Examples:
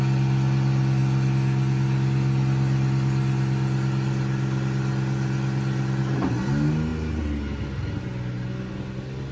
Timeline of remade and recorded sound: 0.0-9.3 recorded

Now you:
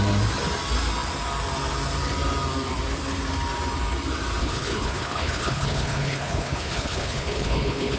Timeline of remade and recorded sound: 0.0-4.4 recorded; 4.4-8.0 remade

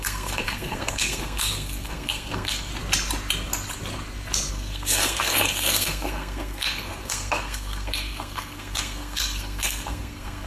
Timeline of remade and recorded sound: 0.0-2.7 remade; 2.7-4.5 recorded; 4.5-10.5 remade

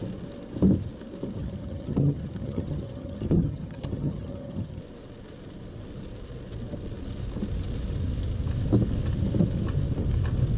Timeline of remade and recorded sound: 0.0-1.4 recorded; 1.4-4.8 remade; 4.8-10.6 recorded

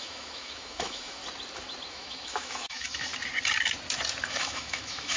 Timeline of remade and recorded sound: 0.0-1.2 remade; 1.2-1.9 recorded; 1.9-3.1 remade; 3.1-4.3 recorded; 4.3-5.2 remade

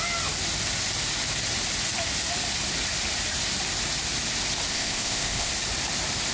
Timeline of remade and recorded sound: 0.0-4.7 recorded; 4.7-5.5 remade; 5.5-6.3 recorded

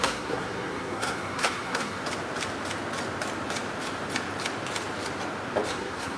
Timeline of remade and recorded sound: 0.0-2.0 remade; 2.0-5.7 recorded; 5.7-6.2 remade